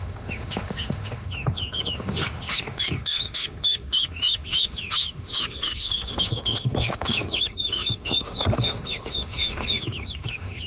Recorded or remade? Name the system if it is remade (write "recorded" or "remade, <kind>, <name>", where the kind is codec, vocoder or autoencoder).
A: remade, autoencoder, DAC-VAE